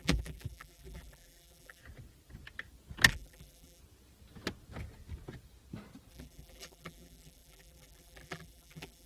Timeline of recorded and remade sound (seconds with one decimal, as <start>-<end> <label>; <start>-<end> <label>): 0.0-1.8 remade; 1.8-3.1 recorded; 3.1-3.8 remade; 3.8-6.1 recorded; 6.1-9.1 remade